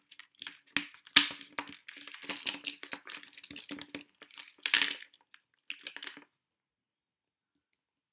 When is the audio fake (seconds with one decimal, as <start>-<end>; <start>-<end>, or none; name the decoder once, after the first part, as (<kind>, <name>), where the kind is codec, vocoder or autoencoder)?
none